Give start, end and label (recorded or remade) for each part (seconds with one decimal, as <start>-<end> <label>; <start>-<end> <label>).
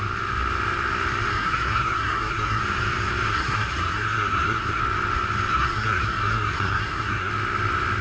0.0-1.3 recorded; 1.3-2.6 remade; 2.6-3.3 recorded; 3.3-4.8 remade; 4.8-5.5 recorded; 5.5-7.3 remade; 7.3-8.0 recorded